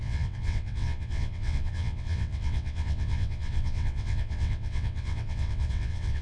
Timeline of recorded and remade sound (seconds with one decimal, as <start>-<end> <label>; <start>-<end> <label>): 0.0-6.2 remade